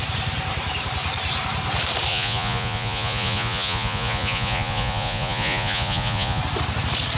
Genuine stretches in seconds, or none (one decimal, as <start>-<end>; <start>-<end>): 0.0-2.1; 6.4-7.2